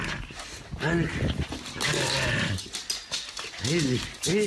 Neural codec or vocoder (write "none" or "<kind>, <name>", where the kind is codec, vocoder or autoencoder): none